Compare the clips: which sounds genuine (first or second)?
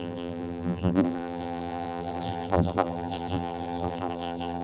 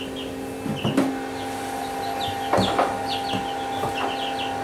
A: second